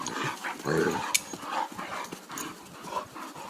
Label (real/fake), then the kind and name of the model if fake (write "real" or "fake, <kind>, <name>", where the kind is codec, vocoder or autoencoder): real